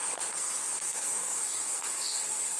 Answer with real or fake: fake